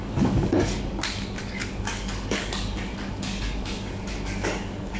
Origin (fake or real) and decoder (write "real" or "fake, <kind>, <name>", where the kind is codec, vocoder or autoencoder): fake, codec, DAC